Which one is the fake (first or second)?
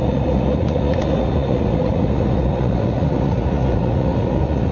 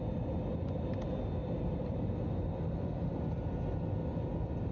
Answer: first